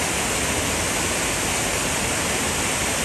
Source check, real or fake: real